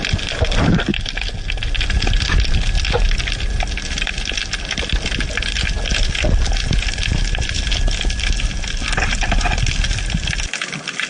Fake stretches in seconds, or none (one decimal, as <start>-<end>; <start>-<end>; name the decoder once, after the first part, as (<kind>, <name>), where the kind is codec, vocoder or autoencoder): 5.9-7.4 (vocoder, BigVGAN v2)